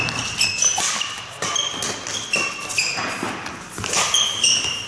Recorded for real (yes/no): yes